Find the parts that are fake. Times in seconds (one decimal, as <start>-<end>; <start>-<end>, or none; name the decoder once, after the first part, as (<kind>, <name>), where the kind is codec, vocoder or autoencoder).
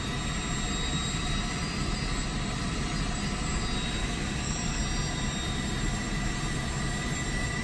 4.0-4.8 (codec, DAC)